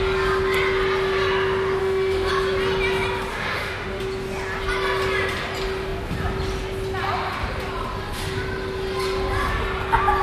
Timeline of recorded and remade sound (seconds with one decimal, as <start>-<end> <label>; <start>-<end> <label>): 0.0-1.8 recorded; 1.8-2.3 remade; 2.3-3.3 recorded; 3.3-4.0 remade; 4.0-10.2 recorded